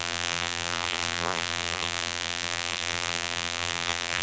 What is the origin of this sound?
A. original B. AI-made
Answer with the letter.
B